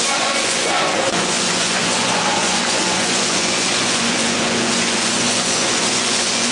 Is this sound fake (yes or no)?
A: yes